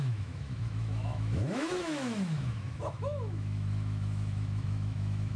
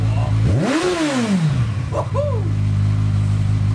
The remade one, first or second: first